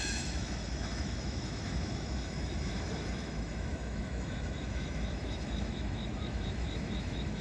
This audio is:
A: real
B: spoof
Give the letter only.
B